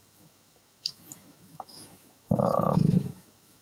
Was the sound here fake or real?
fake